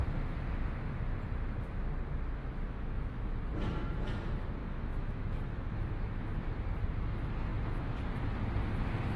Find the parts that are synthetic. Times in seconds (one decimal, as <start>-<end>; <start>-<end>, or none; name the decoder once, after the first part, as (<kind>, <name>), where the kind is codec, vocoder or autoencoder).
2.4-3.4 (autoencoder, DAC-VAE); 4.6-6.4

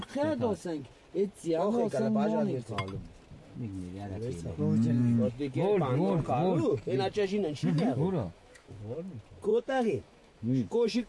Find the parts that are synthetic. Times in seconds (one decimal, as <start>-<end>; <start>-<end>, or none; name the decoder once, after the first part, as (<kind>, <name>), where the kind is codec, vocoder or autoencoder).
7.6-8.8 (autoencoder, DAC-VAE); 9.5-11.1

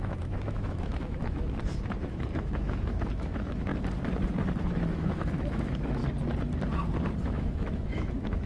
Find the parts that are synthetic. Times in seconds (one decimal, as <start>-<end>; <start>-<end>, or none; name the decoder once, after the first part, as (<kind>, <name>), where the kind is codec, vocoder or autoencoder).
0.0-3.7 (autoencoder, DAC-VAE); 4.6-6.0; 7.2-8.5

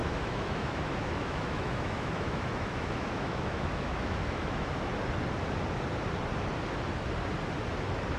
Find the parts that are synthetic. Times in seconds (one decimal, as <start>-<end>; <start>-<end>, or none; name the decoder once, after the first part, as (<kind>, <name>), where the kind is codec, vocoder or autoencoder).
0.0-4.9 (autoencoder, DAC-VAE)

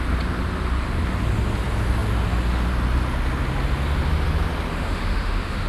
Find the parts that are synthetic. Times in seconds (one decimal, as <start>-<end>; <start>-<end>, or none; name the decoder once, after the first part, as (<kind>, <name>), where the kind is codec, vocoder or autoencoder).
4.7-5.7 (autoencoder, DAC-VAE)

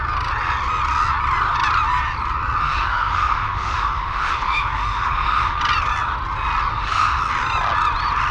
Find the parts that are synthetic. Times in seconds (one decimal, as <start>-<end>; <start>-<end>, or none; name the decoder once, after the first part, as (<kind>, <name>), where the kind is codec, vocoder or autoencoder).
2.6-5.6 (autoencoder, DAC-VAE); 6.7-7.2

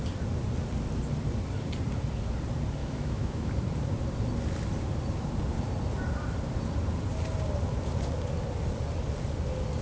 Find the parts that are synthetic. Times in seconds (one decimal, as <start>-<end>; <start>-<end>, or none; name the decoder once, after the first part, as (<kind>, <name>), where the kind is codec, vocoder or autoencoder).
2.8-3.5 (autoencoder, DAC-VAE)